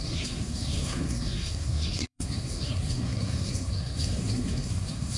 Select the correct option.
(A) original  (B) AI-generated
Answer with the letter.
B